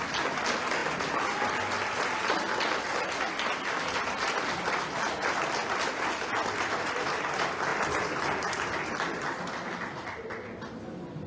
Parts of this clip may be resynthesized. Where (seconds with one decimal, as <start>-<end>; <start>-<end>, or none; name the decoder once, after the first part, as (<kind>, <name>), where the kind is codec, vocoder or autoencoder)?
none